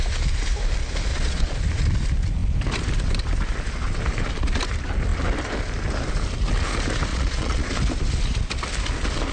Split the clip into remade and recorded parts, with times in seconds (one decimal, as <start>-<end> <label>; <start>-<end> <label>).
0.0-1.1 recorded; 1.1-1.6 remade; 1.6-7.1 recorded; 7.1-7.7 remade; 7.7-9.3 recorded